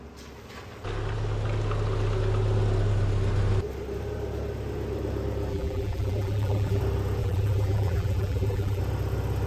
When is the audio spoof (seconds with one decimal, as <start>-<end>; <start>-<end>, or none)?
5.5-6.8; 7.2-8.8